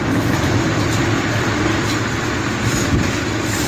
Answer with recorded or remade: recorded